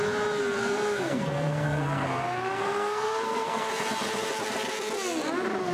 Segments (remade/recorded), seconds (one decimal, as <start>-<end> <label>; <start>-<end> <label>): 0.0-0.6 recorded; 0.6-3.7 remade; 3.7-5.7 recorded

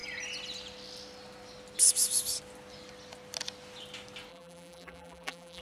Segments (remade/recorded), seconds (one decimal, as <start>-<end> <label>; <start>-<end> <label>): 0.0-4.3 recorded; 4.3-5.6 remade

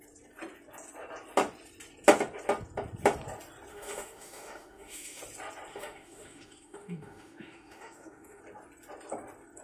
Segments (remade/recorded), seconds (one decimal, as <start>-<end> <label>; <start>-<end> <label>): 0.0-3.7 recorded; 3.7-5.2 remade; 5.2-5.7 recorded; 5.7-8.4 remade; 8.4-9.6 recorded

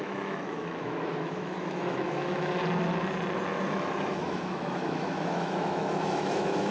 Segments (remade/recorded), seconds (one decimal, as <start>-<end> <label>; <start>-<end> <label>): 0.0-2.6 remade; 2.6-3.5 recorded; 3.5-6.7 remade

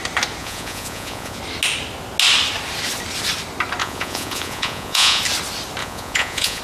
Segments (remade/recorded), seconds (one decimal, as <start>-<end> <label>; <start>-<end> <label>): 0.0-0.4 recorded; 0.4-1.4 remade; 1.4-3.8 recorded; 3.8-5.2 remade; 5.2-5.8 recorded; 5.8-6.6 remade

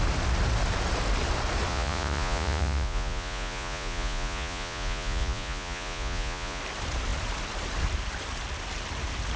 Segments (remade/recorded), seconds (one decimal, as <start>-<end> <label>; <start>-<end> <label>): 0.0-1.7 recorded; 1.7-6.6 remade; 6.6-9.4 recorded